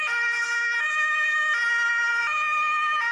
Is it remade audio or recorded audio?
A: recorded